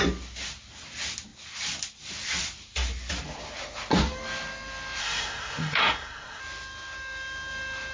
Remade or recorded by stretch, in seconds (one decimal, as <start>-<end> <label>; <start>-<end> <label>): 0.0-5.0 recorded; 5.0-6.4 remade; 6.4-7.9 recorded